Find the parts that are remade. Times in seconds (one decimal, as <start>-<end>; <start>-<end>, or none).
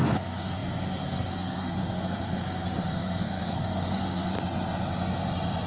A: 0.0-4.3